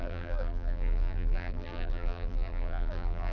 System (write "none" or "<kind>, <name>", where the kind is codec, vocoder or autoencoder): vocoder, BigVGAN v2